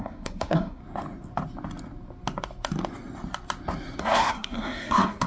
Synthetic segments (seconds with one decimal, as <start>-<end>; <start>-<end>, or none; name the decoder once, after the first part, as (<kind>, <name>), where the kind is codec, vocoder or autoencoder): 0.0-0.8 (codec, SNAC); 4.0-5.3